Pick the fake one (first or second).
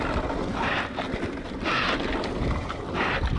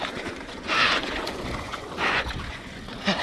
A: second